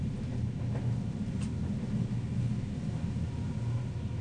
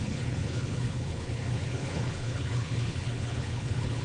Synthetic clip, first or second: second